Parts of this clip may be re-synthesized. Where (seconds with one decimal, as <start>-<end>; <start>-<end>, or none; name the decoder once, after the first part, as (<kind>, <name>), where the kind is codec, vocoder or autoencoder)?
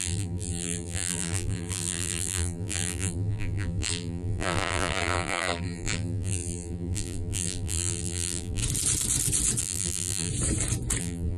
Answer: 0.0-8.6 (vocoder, BigVGAN v2); 9.6-10.3; 11.0-11.4